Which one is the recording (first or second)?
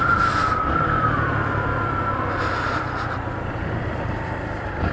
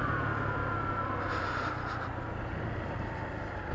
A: second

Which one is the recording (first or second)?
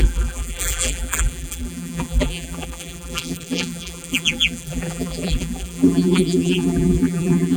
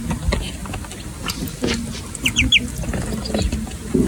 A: second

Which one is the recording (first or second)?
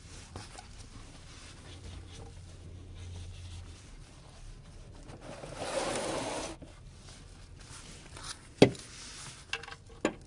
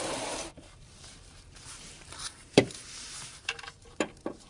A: first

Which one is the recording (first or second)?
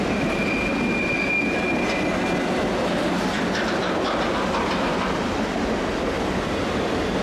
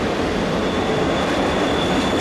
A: first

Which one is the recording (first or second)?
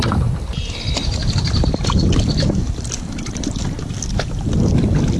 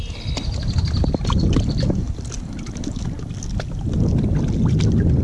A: second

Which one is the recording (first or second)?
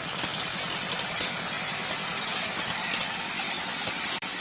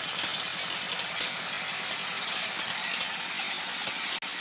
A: second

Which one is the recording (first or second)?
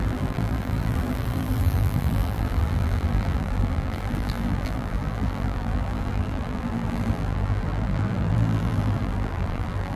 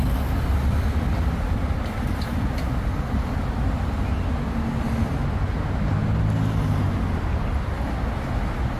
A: second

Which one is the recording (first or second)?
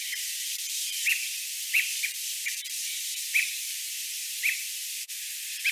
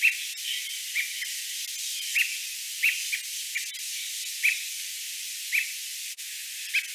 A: second